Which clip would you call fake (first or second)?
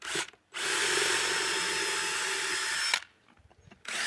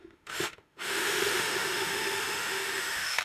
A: second